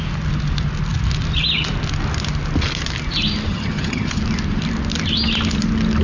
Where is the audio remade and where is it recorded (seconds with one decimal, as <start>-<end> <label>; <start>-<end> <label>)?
0.0-3.5 recorded; 3.5-4.2 remade; 4.2-6.0 recorded